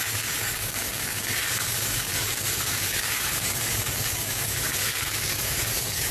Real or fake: fake